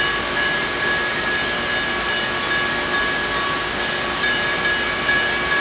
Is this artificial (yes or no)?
no